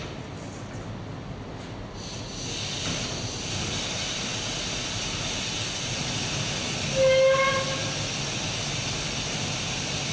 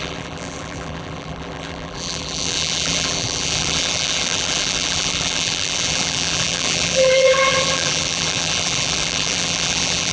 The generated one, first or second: second